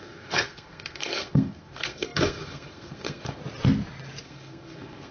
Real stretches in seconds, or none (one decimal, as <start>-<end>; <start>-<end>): 3.4-4.2